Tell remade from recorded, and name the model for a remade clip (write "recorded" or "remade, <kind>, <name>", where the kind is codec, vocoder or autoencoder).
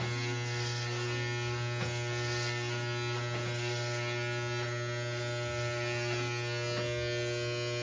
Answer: recorded